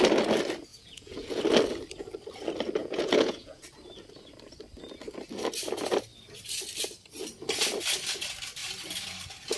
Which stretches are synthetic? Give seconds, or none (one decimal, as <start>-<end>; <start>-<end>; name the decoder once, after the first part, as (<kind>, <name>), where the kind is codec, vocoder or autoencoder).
0.7-1.4 (vocoder, Vocos); 2.8-3.6